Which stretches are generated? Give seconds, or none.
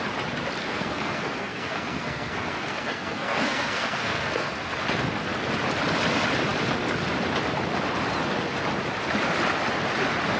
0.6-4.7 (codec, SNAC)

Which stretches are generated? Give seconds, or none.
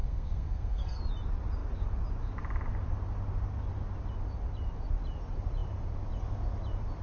0.0-1.0 (codec, SNAC)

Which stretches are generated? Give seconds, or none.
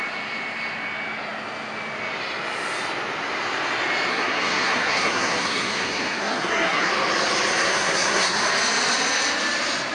4.1-6.9 (codec, SNAC); 7.6-8.4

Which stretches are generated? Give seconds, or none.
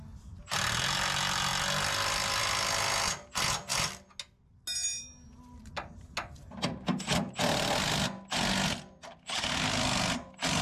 none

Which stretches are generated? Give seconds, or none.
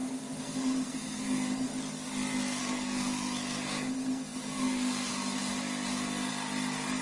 0.0-1.7 (codec, SNAC); 2.6-5.1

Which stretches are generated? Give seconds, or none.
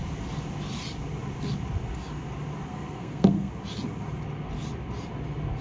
2.7-3.5 (codec, SNAC)